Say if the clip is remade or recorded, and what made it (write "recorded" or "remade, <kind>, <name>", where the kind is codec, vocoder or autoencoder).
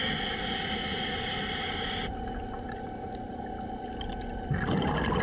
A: recorded